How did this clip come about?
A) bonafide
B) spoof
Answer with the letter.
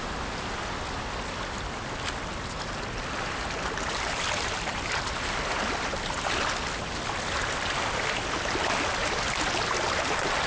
A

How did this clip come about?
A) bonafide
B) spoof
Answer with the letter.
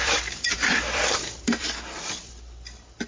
B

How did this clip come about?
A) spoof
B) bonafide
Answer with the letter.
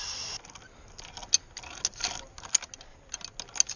B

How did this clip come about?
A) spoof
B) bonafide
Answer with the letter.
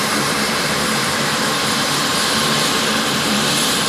A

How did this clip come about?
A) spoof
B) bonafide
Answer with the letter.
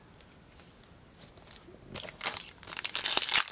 B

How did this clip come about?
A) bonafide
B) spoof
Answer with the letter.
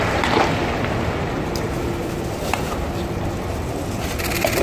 A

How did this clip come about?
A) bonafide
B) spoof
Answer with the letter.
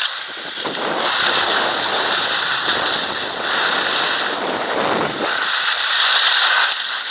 A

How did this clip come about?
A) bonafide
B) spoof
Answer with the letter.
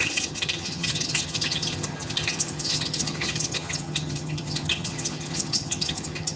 B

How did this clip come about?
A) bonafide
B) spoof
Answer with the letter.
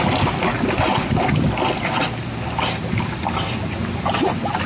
A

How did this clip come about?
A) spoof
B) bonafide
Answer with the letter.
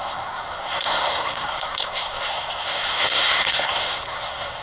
A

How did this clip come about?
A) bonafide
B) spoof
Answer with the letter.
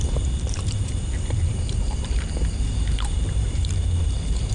B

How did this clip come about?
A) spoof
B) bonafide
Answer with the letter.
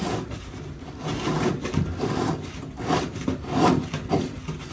B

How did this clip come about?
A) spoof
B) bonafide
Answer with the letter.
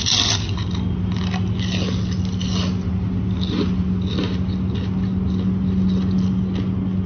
B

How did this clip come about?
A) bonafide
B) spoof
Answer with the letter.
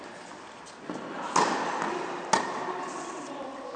A